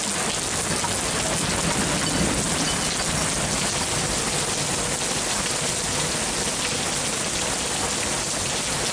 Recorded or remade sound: recorded